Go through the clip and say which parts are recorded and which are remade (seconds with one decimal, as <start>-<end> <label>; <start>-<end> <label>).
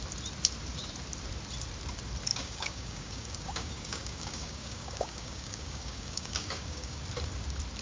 0.0-2.3 recorded; 2.3-7.0 remade; 7.0-7.8 recorded